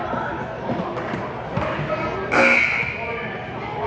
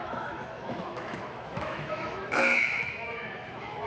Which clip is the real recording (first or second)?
first